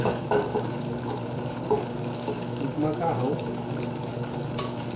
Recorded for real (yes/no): no